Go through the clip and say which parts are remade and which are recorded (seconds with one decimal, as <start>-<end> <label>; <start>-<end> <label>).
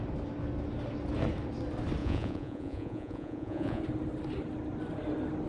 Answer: 0.0-2.0 recorded; 2.0-3.8 remade; 3.8-5.5 recorded